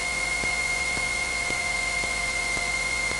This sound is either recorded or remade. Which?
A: remade